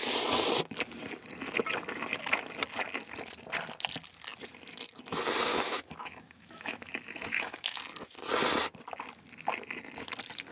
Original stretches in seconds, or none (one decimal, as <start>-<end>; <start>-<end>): 0.0-5.5; 7.8-10.5